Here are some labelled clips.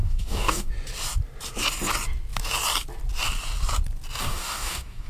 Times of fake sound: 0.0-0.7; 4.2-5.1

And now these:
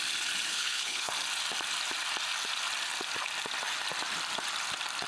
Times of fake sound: 0.5-1.1

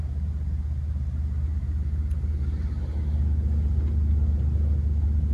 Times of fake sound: none

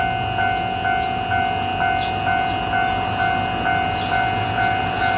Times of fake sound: none

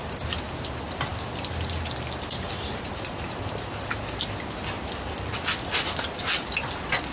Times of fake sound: none